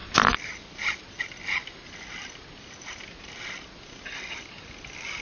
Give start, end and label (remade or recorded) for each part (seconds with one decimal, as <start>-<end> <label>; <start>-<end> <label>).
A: 0.0-5.2 recorded